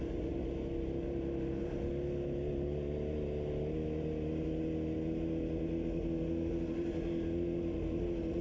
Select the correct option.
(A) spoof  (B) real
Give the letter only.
B